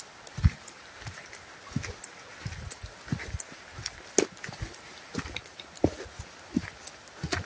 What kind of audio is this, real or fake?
real